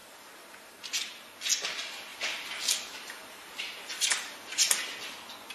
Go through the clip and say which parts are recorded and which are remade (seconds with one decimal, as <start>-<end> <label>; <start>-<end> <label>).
0.0-0.8 remade; 0.8-2.1 recorded; 2.1-4.6 remade; 4.6-5.5 recorded